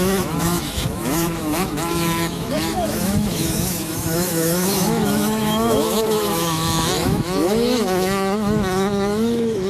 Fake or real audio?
fake